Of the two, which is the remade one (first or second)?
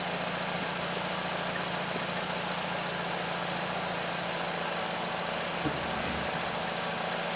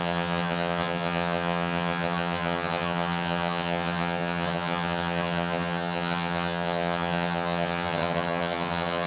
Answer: second